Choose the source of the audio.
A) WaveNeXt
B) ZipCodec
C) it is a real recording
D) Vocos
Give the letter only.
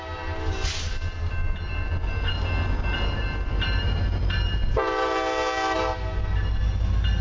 C